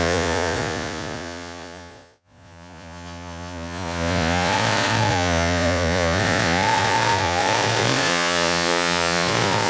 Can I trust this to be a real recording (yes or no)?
no